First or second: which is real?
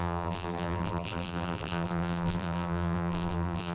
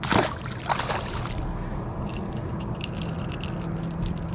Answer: second